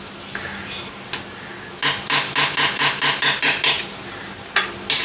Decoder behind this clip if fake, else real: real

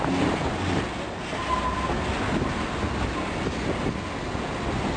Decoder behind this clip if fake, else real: real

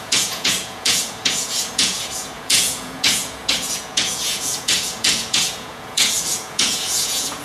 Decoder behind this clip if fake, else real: fake, vocoder, Vocos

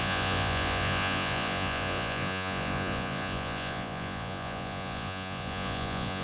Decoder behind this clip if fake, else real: fake, vocoder, Vocos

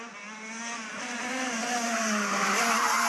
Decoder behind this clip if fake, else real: real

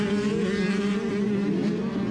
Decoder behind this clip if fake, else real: real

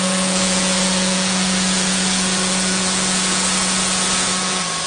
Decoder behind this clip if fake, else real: fake, vocoder, Vocos